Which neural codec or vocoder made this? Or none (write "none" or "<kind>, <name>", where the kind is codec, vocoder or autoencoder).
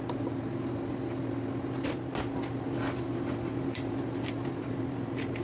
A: none